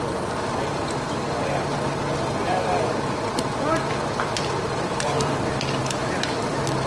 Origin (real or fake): fake